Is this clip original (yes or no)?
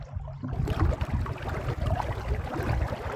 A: yes